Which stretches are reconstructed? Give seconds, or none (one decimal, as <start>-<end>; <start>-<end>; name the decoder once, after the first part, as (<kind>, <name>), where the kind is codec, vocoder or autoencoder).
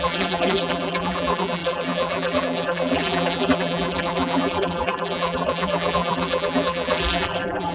0.0-7.7 (vocoder, BigVGAN v2)